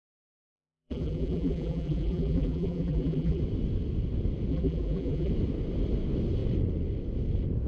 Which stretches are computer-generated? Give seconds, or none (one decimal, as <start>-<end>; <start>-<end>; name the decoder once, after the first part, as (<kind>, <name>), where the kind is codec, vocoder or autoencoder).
0.5-3.4 (vocoder, BigVGAN v2); 4.5-5.3